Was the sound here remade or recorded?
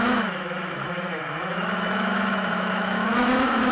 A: remade